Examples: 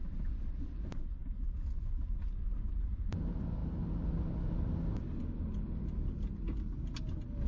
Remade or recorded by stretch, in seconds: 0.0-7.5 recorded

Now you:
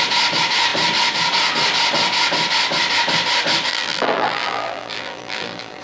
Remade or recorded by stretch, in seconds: 0.0-3.7 recorded; 3.7-5.8 remade

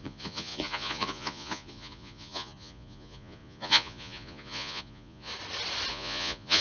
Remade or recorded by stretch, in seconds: 0.0-5.3 remade; 5.3-5.9 recorded; 5.9-6.6 remade